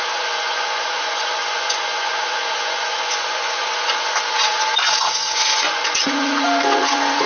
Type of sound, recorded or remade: remade